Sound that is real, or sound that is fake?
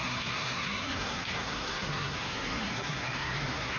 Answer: fake